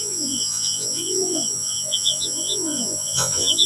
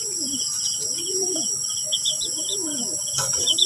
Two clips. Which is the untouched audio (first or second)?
second